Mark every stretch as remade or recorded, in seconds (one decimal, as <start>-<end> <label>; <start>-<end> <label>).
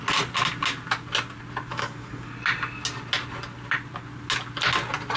0.0-1.7 recorded; 1.7-2.3 remade; 2.3-5.2 recorded